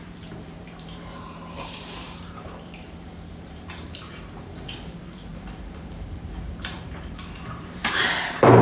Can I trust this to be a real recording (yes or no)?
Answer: no